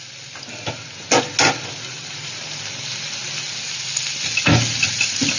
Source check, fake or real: real